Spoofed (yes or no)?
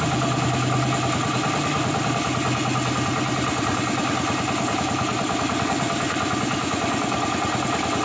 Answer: no